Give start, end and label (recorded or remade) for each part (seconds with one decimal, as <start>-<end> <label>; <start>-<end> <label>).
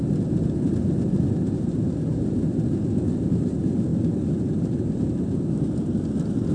0.0-6.5 recorded